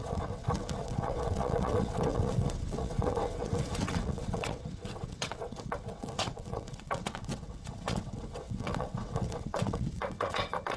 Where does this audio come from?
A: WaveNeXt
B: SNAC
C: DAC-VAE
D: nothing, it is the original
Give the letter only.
A